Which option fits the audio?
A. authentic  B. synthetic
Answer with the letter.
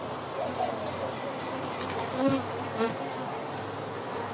A